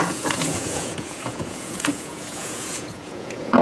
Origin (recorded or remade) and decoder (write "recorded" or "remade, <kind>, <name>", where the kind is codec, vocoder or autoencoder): remade, vocoder, Vocos